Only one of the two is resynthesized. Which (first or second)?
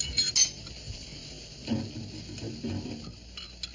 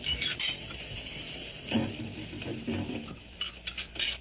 second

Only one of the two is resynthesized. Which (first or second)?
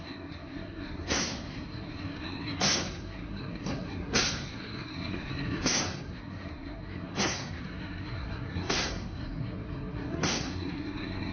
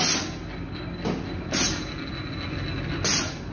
first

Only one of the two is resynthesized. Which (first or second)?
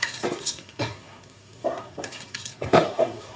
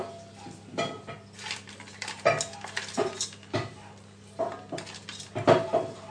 first